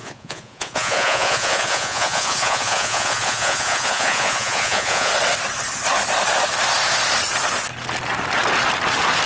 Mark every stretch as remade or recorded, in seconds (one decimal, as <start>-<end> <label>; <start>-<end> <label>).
0.0-5.1 remade; 5.1-9.3 recorded

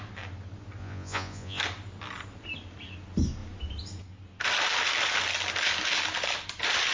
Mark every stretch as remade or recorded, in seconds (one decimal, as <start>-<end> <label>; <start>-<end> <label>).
0.0-0.8 recorded; 0.8-1.6 remade; 1.6-6.9 recorded

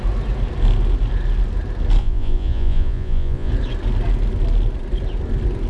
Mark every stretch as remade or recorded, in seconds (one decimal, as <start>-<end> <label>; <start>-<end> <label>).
0.0-2.0 recorded; 2.0-3.5 remade; 3.5-5.7 recorded

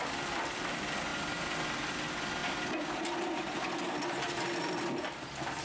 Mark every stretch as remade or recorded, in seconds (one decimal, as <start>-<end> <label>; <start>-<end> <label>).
0.0-5.6 recorded

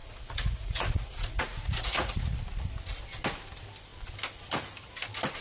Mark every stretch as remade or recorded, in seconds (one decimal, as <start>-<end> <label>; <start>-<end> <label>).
0.0-2.4 remade; 2.4-5.4 recorded

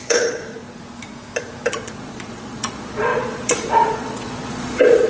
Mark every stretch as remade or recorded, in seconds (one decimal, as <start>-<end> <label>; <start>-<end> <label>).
0.0-0.6 remade; 0.6-1.7 recorded; 1.7-5.1 remade